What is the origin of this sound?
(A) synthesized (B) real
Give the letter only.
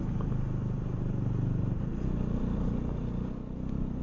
A